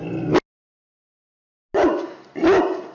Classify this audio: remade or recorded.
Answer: recorded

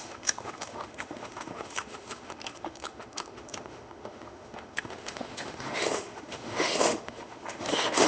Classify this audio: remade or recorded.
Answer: remade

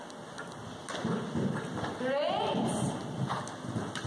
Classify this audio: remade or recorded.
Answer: recorded